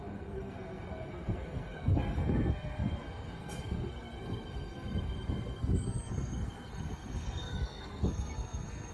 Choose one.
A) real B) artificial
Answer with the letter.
B